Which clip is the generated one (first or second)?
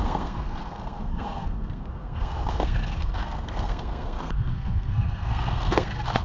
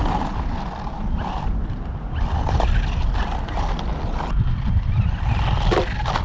first